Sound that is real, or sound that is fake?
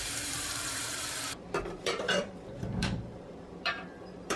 fake